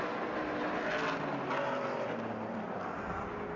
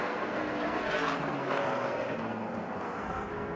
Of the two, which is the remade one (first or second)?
second